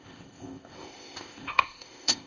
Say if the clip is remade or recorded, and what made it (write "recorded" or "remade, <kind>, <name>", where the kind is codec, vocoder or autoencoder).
remade, codec, ZipCodec